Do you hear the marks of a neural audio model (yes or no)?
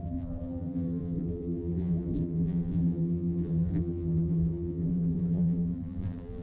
yes